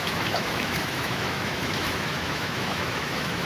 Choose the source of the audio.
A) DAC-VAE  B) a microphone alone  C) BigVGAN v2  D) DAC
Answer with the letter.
A